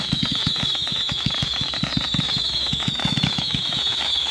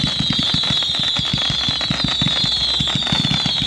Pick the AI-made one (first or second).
first